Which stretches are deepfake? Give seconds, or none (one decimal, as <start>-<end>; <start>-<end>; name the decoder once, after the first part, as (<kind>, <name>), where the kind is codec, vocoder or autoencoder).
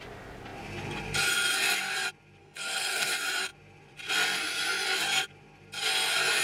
2.4-3.1 (codec, SNAC)